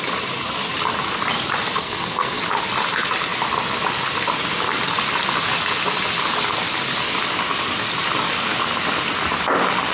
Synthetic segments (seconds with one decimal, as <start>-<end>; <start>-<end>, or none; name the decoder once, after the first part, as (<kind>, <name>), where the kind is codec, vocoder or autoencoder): 1.8-2.4 (codec, SNAC)